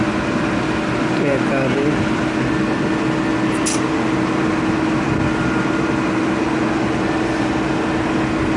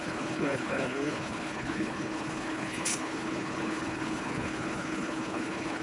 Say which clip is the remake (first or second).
second